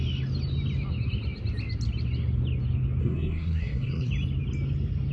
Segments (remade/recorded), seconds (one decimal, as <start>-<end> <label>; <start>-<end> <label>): 0.0-3.0 recorded; 3.0-4.1 remade; 4.1-5.1 recorded